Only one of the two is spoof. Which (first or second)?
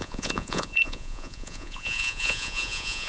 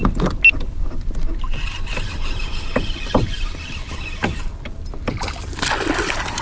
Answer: first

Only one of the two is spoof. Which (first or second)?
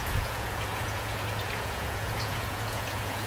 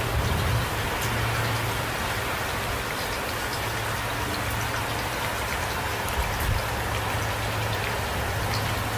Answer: first